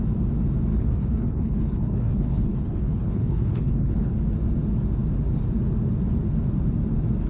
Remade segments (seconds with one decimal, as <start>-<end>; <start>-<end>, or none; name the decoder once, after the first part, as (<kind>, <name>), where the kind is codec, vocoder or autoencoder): 0.7-4.2 (codec, HILCodec)